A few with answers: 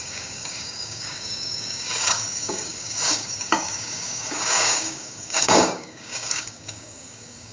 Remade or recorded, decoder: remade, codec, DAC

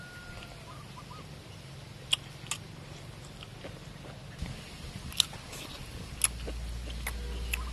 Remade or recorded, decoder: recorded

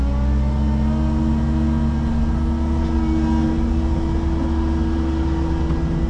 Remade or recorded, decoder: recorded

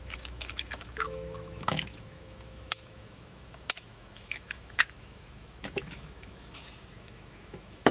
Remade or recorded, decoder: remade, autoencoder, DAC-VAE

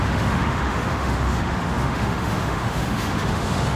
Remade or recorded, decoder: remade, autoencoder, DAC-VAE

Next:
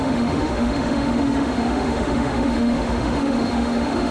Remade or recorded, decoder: remade, autoencoder, DAC-VAE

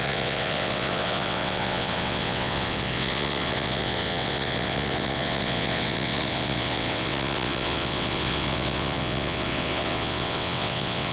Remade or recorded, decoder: remade, vocoder, WaveNeXt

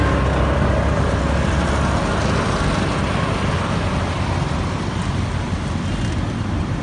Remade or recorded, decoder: recorded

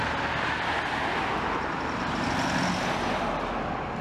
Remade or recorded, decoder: recorded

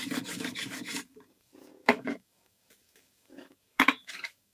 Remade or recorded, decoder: remade, codec, DAC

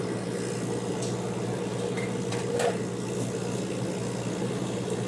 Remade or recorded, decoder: recorded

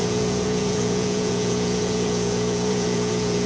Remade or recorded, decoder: remade, vocoder, Vocos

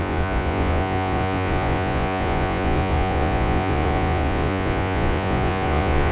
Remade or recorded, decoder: remade, vocoder, Vocos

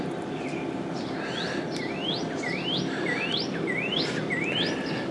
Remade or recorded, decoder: recorded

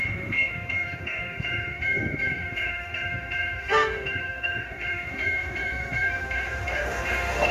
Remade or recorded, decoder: remade, autoencoder, DAC-VAE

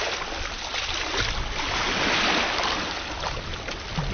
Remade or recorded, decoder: recorded